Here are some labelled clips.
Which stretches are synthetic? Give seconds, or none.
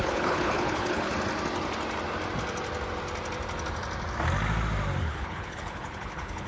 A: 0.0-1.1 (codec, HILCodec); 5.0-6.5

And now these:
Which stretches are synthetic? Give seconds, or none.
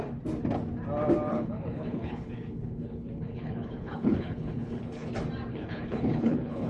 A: 1.3-5.1 (codec, HILCodec); 5.5-6.7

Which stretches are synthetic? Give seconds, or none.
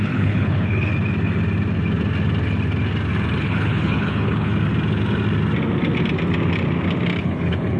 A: 0.0-0.9 (codec, HILCodec); 3.4-4.5; 7.2-7.8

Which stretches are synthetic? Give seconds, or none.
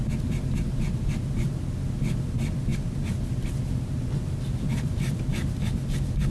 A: none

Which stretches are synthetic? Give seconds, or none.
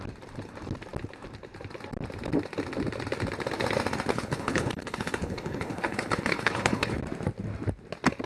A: 4.1-7.0 (codec, HILCodec)